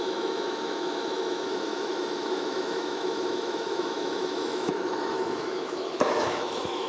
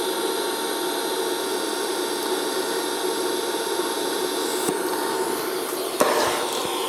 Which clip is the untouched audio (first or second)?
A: second